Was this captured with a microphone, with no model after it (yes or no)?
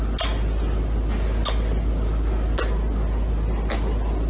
yes